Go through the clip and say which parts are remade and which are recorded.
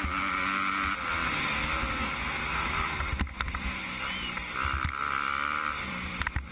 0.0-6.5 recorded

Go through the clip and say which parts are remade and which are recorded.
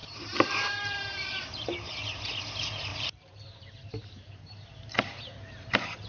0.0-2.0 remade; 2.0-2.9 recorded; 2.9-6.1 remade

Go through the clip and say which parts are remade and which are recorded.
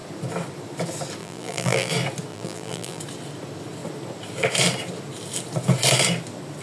0.0-1.2 recorded; 1.2-1.9 remade; 1.9-2.3 recorded; 2.3-3.0 remade; 3.0-6.6 recorded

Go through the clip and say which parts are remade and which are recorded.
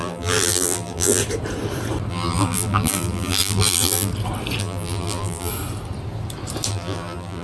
0.0-1.2 remade; 1.2-2.1 recorded; 2.1-4.1 remade; 4.1-4.6 recorded; 4.6-5.5 remade; 5.5-6.7 recorded; 6.7-7.4 remade